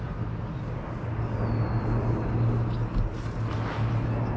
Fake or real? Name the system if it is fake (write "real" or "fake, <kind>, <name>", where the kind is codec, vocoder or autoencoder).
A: real